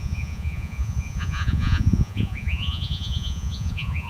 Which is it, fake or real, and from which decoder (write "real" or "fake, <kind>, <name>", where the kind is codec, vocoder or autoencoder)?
fake, vocoder, Vocos